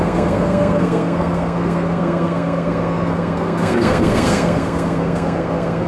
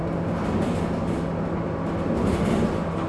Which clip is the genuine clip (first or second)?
second